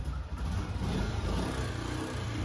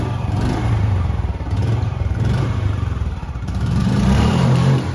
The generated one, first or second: second